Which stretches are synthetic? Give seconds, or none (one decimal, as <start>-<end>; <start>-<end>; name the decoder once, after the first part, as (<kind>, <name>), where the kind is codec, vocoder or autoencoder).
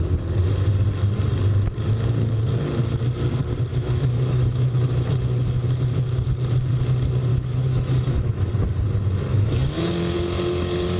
3.7-5.1 (autoencoder, DAC-VAE); 7.3-8.5; 9.3-9.9